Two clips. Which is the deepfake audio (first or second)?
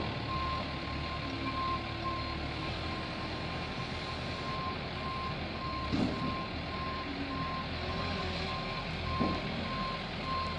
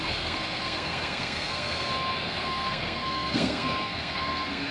second